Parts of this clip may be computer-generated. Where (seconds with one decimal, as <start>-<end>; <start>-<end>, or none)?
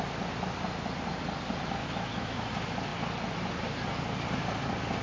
1.8-2.5